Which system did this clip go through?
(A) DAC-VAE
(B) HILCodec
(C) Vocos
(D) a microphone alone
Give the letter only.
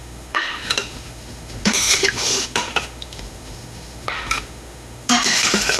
A